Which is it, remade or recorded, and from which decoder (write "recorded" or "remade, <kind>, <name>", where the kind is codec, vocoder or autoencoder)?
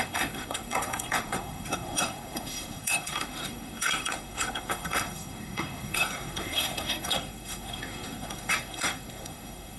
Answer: remade, codec, SNAC